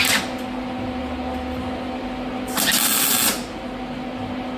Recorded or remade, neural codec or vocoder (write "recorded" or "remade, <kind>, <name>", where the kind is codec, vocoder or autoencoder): recorded